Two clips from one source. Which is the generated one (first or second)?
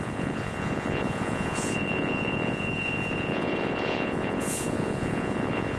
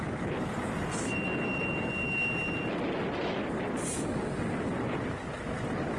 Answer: first